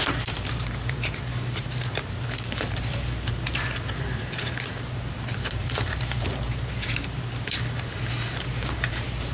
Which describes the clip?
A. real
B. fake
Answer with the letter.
B